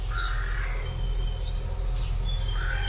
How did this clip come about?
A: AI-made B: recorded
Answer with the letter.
B